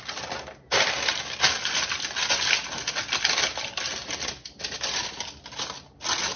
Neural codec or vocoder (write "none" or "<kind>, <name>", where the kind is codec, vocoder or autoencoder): none